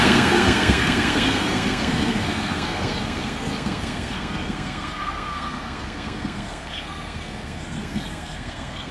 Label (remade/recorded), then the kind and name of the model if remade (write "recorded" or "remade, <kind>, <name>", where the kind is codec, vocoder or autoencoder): remade, codec, SNAC